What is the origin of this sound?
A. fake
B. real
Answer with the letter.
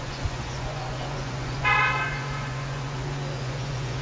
A